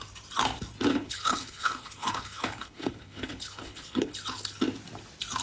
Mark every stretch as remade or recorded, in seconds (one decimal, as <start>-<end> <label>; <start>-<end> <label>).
0.0-0.9 recorded; 0.9-4.1 remade; 4.1-5.4 recorded